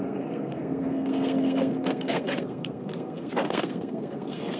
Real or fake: fake